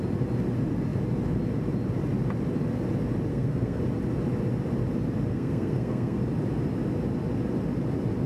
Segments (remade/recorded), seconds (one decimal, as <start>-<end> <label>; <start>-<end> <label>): 0.0-3.3 recorded; 3.3-3.8 remade; 3.8-5.3 recorded; 5.3-6.2 remade; 6.2-8.3 recorded